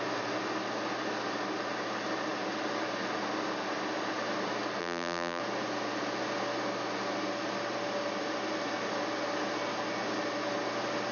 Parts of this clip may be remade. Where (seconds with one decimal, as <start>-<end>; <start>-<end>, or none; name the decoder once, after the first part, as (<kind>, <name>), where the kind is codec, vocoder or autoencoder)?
4.8-5.4 (vocoder, BigVGAN v2)